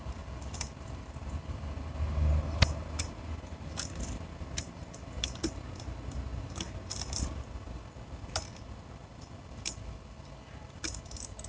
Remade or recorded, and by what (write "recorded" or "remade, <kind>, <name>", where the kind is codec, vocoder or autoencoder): recorded